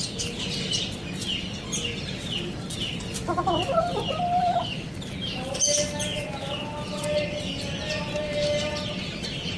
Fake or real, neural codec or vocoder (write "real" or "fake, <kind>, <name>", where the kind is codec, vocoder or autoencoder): real